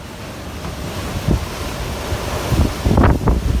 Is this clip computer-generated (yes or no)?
no